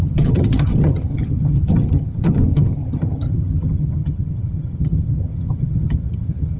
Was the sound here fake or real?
fake